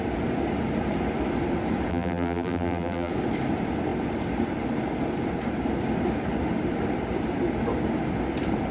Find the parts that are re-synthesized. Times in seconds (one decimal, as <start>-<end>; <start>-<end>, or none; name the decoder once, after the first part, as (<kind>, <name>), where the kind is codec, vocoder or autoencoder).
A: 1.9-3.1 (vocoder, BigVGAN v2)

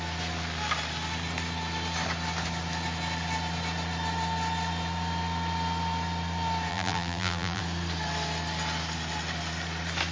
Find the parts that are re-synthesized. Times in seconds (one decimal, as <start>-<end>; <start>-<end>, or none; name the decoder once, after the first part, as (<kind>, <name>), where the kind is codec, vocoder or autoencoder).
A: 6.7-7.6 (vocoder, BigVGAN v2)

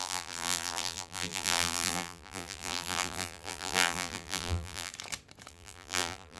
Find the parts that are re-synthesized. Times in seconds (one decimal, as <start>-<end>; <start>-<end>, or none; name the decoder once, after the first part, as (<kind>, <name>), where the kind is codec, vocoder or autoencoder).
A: 0.0-4.9 (vocoder, BigVGAN v2); 5.5-6.4

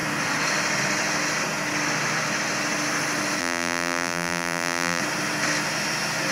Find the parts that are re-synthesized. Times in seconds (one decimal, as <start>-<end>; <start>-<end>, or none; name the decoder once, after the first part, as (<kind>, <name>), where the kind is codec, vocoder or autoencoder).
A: 3.4-5.0 (vocoder, BigVGAN v2)

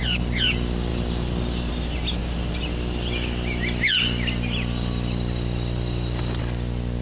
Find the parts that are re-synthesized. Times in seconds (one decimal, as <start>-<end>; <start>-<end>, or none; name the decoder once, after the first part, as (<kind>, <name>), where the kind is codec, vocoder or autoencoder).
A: 0.9-1.7 (vocoder, BigVGAN v2); 2.2-6.4

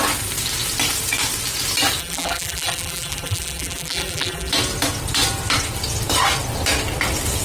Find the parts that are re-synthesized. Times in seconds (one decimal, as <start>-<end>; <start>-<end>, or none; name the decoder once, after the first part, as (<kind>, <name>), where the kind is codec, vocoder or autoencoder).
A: 2.0-4.5 (vocoder, BigVGAN v2)